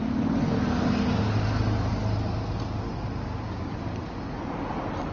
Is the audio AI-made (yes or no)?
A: no